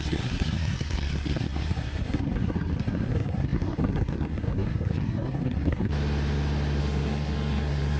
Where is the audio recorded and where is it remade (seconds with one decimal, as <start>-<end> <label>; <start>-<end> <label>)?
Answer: 0.0-5.9 remade; 5.9-6.8 recorded; 6.8-8.0 remade